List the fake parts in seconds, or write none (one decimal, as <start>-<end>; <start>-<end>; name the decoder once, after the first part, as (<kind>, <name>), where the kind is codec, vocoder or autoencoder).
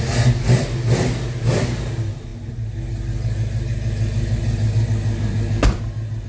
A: none